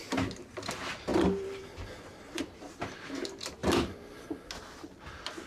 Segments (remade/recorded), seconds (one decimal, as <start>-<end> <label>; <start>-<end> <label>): 0.0-1.1 recorded; 1.1-2.4 remade; 2.4-5.5 recorded